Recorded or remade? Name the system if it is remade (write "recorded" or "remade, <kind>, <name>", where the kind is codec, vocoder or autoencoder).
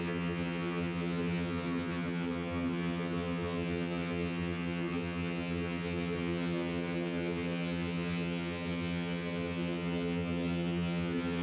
remade, vocoder, HiFi-GAN